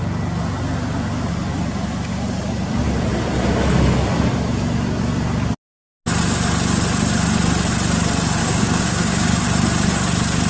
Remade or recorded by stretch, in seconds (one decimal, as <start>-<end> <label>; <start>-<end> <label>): 0.0-8.4 recorded; 8.4-9.4 remade; 9.4-10.5 recorded